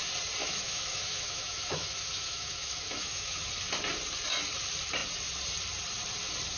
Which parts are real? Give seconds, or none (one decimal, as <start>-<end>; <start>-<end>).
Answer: 0.0-0.4; 3.4-6.6